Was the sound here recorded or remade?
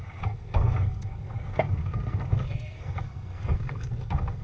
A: remade